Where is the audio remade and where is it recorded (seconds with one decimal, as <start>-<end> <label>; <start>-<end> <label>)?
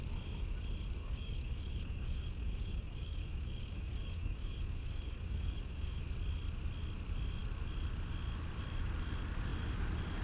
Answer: 0.0-1.0 recorded; 1.0-6.0 remade; 6.0-10.2 recorded